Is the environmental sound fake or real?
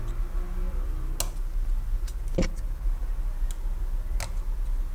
real